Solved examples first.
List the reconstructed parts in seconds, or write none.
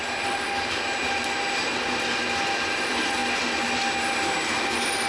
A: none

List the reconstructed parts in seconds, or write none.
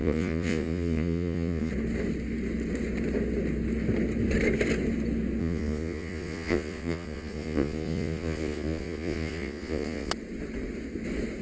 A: 0.0-1.7 (vocoder, Vocos); 5.4-10.1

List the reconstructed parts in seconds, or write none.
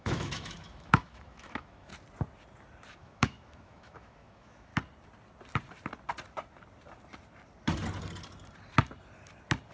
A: 0.0-1.9 (autoencoder, DAC-VAE); 2.9-4.7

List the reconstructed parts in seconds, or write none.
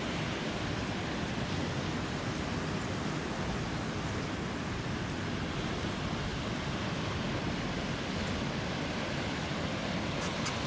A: none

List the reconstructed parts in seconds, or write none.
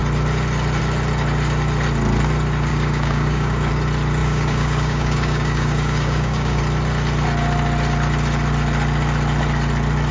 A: 2.7-3.7 (codec, DAC); 4.2-6.6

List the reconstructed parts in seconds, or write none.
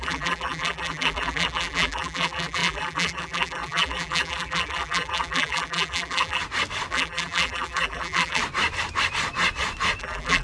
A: 0.0-6.4 (vocoder, BigVGAN v2); 6.9-8.4; 10.0-10.4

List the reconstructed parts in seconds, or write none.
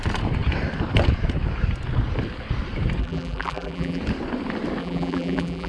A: 3.0-4.0 (vocoder, BigVGAN v2); 4.8-5.7